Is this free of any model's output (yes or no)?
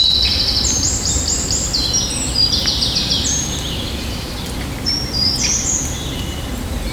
no